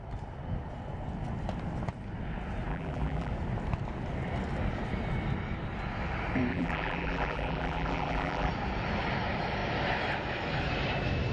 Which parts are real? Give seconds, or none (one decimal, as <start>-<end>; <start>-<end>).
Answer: 0.0-2.7; 3.3-6.5; 8.5-11.3